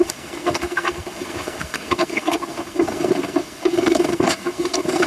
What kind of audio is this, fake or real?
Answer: fake